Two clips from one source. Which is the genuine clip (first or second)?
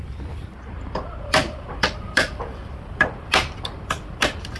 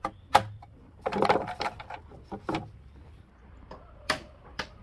second